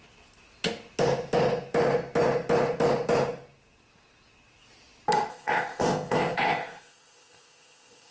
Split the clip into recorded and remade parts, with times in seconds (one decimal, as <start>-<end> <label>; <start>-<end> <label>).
0.0-5.3 recorded; 5.3-8.1 remade

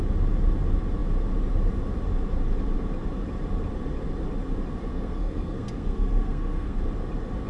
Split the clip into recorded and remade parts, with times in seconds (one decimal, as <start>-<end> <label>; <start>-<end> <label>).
0.0-4.9 recorded; 4.9-6.8 remade; 6.8-7.5 recorded

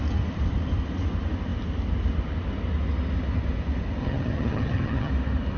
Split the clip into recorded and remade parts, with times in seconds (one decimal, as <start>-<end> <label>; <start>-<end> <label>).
0.0-4.0 recorded; 4.0-5.1 remade; 5.1-5.6 recorded

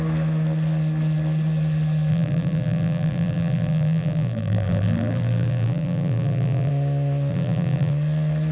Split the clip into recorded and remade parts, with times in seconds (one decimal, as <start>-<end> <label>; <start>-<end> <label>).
0.0-2.1 recorded; 2.1-6.7 remade; 6.7-7.3 recorded; 7.3-7.9 remade; 7.9-8.5 recorded

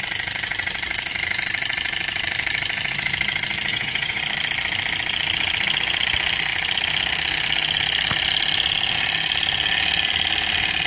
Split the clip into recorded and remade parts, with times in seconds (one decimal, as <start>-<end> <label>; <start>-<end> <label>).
0.0-3.7 recorded; 3.7-4.2 remade; 4.2-10.9 recorded

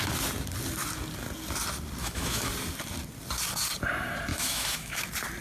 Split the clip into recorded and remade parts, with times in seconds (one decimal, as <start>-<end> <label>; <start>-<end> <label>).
0.0-2.0 recorded; 2.0-2.5 remade; 2.5-4.3 recorded; 4.3-5.0 remade; 5.0-5.4 recorded